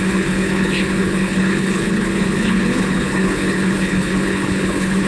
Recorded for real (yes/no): no